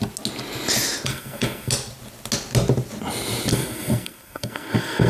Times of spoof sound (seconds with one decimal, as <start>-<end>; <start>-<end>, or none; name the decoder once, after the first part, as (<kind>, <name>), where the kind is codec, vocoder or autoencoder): 1.1-1.7 (codec, SNAC); 3.5-5.1